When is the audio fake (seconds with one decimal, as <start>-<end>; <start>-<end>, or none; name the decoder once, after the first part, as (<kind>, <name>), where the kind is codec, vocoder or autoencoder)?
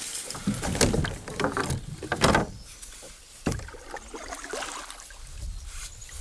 none